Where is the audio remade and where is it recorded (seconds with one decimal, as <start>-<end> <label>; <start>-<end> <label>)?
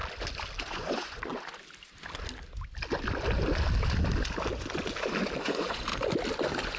0.0-0.6 recorded; 0.6-1.3 remade; 1.3-5.4 recorded; 5.4-5.9 remade; 5.9-6.8 recorded